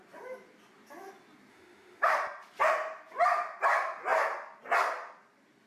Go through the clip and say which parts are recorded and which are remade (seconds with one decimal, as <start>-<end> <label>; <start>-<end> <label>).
0.0-1.5 recorded; 1.5-2.2 remade; 2.2-5.7 recorded